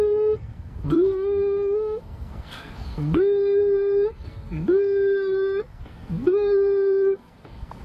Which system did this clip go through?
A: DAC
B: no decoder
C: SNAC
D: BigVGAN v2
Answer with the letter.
C